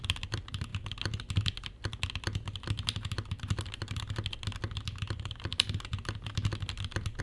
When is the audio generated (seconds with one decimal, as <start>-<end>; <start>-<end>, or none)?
0.0-0.7; 5.0-5.5

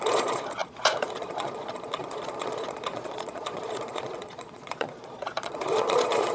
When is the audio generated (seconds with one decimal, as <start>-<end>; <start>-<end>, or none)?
0.0-6.3